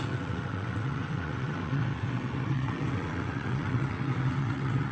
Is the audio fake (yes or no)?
yes